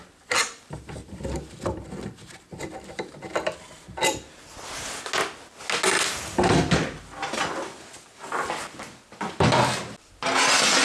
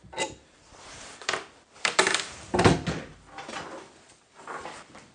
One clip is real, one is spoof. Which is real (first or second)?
first